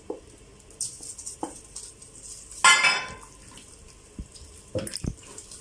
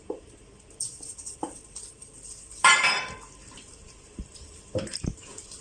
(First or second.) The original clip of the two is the first